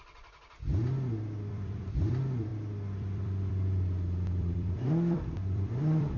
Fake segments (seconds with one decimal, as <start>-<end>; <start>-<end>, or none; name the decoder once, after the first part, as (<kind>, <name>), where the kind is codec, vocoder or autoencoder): 1.5-6.2 (vocoder, BigVGAN v2)